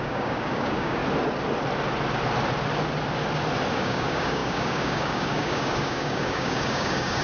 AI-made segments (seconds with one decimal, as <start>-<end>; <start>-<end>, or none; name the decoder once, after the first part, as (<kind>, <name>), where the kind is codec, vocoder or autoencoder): 0.0-1.0 (codec, DAC); 3.7-7.2